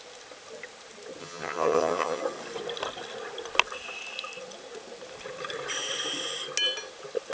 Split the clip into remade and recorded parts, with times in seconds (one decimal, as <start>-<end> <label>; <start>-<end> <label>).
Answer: 0.0-1.2 recorded; 1.2-2.2 remade; 2.2-7.3 recorded